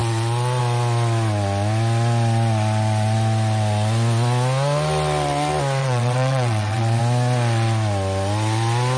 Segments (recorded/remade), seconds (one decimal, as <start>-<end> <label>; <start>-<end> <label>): 0.0-5.8 recorded; 5.8-7.0 remade; 7.0-9.0 recorded